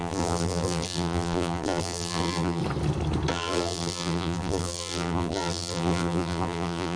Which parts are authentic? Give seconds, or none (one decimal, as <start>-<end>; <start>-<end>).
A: 2.6-3.3